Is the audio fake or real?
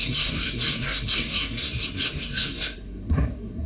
fake